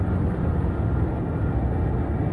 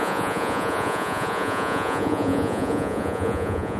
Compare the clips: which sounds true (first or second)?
first